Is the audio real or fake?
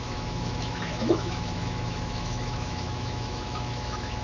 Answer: fake